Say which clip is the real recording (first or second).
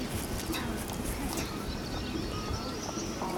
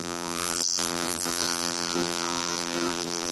first